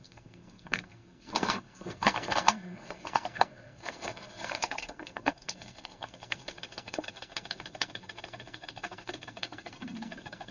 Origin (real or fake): fake